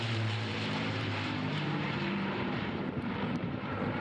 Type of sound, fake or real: fake